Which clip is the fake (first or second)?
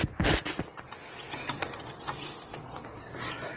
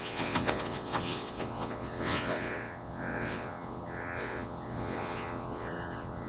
second